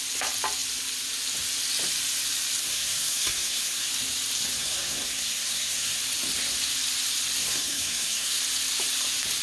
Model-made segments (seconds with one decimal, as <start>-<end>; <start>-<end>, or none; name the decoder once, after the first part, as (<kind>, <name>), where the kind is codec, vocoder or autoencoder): 2.6-3.9 (codec, SNAC); 4.6-6.0; 7.4-8.4